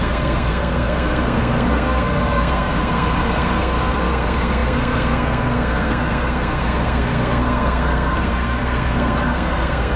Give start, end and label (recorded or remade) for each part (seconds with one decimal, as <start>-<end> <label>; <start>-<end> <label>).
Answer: 0.0-10.0 remade